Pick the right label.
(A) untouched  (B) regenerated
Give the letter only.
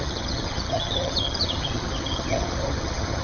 B